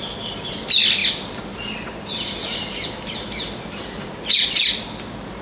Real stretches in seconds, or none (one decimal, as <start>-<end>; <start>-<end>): none